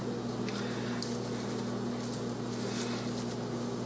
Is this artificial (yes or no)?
no